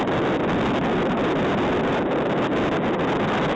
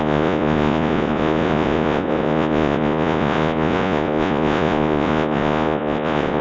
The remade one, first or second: second